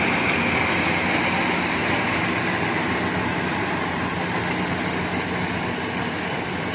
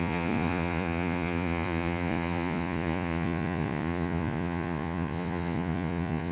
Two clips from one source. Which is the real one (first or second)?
first